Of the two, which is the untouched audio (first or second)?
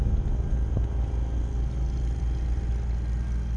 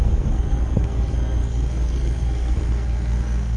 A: first